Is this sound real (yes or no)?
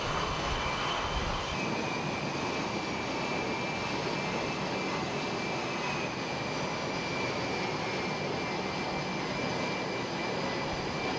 yes